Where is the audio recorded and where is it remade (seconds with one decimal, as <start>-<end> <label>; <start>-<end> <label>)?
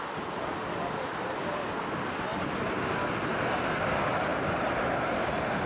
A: 0.0-4.3 recorded; 4.3-5.7 remade